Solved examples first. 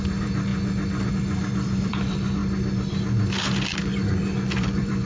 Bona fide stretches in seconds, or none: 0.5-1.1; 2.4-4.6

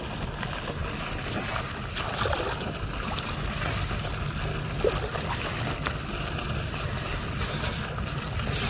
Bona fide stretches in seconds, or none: 0.0-8.7

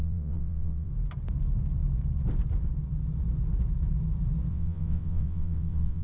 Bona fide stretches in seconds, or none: 0.9-4.5

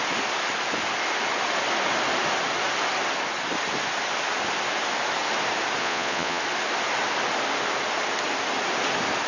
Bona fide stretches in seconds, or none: 0.0-5.8; 6.4-9.3

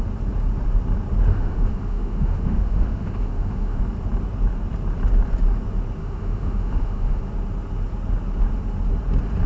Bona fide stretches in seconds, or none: 0.0-1.3; 3.8-6.0; 7.2-9.5

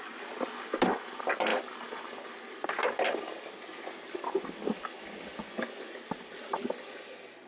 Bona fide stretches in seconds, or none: 0.0-5.4; 5.9-7.5